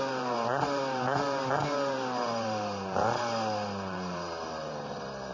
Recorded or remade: remade